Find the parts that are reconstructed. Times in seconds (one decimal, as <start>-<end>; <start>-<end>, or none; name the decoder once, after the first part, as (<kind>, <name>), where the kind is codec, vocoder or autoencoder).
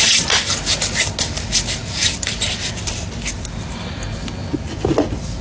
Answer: 1.8-2.7 (vocoder, BigVGAN v2); 4.4-4.9